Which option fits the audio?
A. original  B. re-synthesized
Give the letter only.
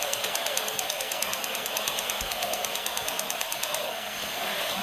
B